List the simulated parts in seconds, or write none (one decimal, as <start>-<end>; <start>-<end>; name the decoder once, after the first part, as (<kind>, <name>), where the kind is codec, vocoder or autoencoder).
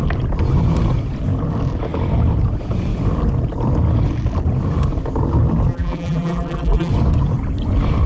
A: 5.7-6.9 (vocoder, BigVGAN v2)